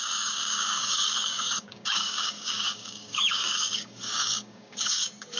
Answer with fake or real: fake